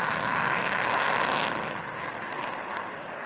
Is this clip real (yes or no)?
yes